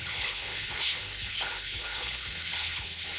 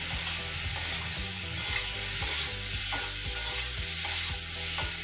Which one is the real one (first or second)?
second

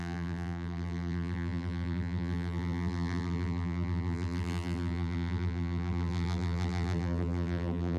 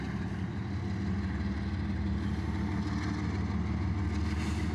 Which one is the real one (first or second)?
second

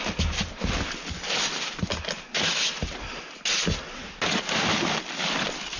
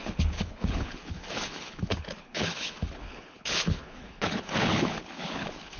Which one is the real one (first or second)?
first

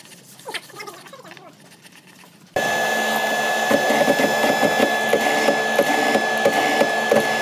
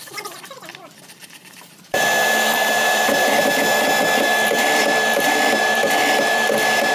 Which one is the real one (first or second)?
first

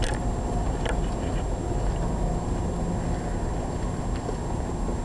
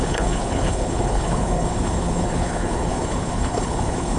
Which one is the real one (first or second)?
first